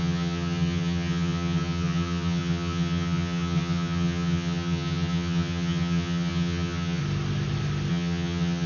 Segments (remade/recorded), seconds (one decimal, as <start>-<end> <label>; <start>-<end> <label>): 0.0-7.0 remade; 7.0-7.9 recorded; 7.9-8.7 remade